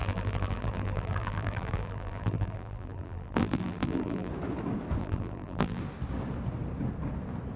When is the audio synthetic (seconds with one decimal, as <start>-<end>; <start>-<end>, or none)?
0.0-4.3; 5.0-5.8